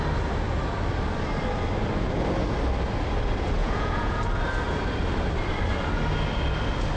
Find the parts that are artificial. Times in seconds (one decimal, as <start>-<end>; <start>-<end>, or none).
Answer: 3.6-4.2

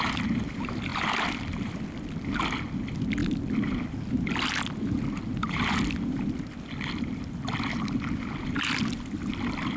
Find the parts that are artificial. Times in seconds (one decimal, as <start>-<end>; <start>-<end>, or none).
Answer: none

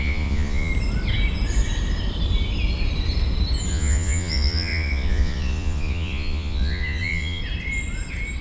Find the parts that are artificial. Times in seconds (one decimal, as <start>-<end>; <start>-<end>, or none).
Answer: 0.0-0.7; 3.7-7.4

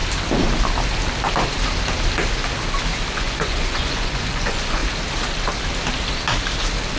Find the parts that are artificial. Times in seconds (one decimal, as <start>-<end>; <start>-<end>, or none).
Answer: 3.1-4.8

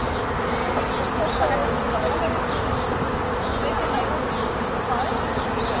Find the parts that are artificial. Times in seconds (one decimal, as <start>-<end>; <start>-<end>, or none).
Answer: 3.5-4.1